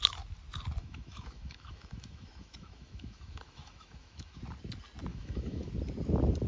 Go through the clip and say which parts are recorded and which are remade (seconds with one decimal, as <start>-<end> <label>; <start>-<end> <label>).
0.0-0.8 recorded; 0.8-4.4 remade; 4.4-5.1 recorded; 5.1-5.7 remade; 5.7-6.5 recorded

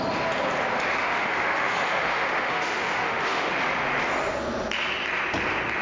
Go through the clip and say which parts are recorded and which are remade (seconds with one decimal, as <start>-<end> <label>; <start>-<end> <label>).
0.0-1.0 recorded; 1.0-3.5 remade; 3.5-5.8 recorded

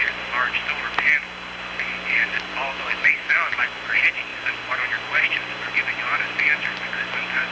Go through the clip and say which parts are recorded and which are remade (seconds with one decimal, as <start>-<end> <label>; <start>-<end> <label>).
0.0-2.5 recorded; 2.5-3.6 remade; 3.6-7.5 recorded